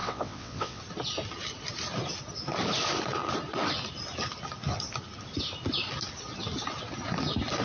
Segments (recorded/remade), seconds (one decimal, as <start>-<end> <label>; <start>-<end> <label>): 0.0-0.8 remade; 0.8-7.6 recorded